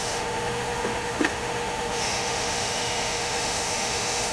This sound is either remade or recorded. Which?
remade